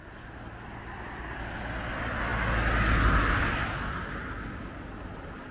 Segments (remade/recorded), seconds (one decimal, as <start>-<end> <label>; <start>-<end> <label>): 0.0-5.5 recorded

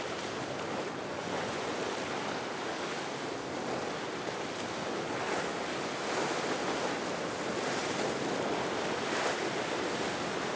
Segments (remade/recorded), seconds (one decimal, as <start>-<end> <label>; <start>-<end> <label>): 0.0-1.1 recorded; 1.1-1.8 remade; 1.8-10.6 recorded

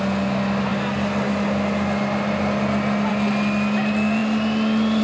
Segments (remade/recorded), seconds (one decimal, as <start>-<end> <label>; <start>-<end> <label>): 0.0-5.0 recorded